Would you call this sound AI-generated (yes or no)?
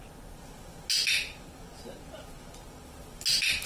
no